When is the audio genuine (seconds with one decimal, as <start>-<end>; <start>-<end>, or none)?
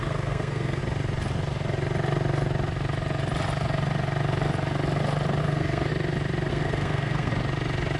0.8-5.4; 5.9-6.5; 7.3-8.0